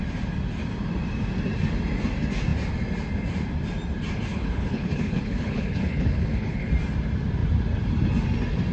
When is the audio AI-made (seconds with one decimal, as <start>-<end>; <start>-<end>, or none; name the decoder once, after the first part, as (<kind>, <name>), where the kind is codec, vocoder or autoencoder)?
4.3-6.7 (codec, HILCodec)